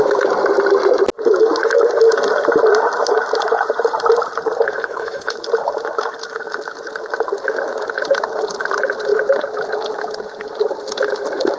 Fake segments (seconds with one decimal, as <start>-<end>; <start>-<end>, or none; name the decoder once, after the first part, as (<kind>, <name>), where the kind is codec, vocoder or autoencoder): 4.8-5.3 (codec, HILCodec)